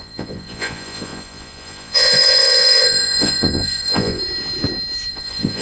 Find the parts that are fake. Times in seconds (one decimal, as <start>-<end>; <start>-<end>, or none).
0.0-4.2; 5.1-5.6